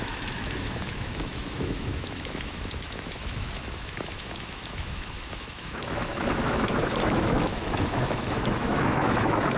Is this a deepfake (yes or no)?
yes